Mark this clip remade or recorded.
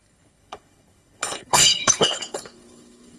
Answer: remade